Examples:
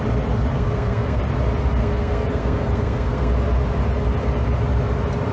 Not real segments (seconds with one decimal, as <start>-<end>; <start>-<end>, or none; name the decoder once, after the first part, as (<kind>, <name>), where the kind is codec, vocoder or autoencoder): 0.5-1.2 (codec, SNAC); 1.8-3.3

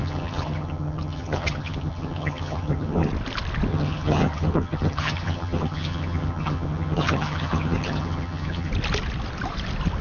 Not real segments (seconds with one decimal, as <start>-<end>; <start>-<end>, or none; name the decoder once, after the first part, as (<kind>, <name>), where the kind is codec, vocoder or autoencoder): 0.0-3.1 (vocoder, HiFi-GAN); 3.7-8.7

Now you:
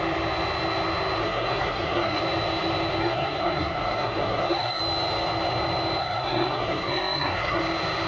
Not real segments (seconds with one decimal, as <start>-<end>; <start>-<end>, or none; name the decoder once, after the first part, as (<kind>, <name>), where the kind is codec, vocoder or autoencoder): 1.2-2.2 (codec, SNAC); 3.0-4.8; 6.0-7.6

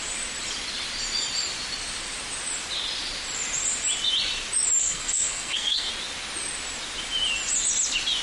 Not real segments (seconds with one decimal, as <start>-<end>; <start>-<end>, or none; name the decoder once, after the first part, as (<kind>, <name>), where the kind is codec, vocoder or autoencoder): 4.8-5.9 (codec, SNAC)